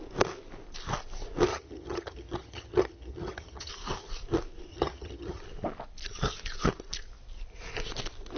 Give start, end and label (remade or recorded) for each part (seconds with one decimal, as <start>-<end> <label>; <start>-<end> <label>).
0.0-1.5 recorded; 1.5-3.7 remade; 3.7-4.7 recorded; 4.7-5.4 remade; 5.4-8.4 recorded